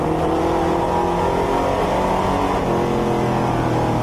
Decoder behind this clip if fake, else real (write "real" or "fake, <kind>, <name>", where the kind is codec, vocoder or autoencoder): real